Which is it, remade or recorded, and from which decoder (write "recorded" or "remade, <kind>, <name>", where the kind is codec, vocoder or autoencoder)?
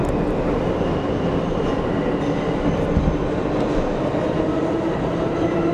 recorded